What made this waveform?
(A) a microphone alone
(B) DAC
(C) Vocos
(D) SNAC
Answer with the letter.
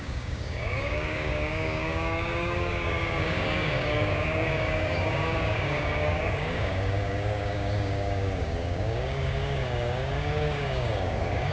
B